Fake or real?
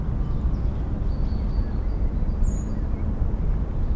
real